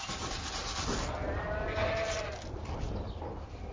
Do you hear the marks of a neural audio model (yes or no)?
no